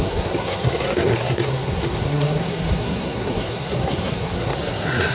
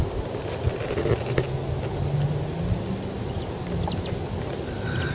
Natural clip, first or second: second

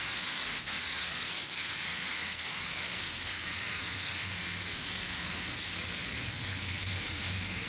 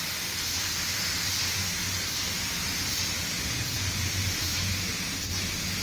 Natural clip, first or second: second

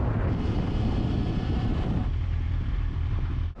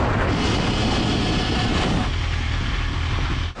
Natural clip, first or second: second